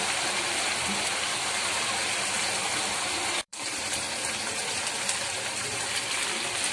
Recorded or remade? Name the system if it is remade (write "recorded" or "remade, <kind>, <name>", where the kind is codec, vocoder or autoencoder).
remade, vocoder, BigVGAN v2